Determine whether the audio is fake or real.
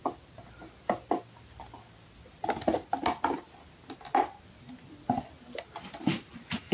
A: real